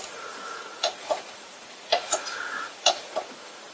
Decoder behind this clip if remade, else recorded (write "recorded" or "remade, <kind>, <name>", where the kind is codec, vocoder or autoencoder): remade, vocoder, Vocos